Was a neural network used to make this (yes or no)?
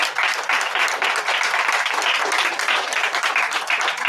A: no